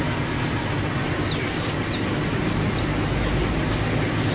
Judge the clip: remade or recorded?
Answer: recorded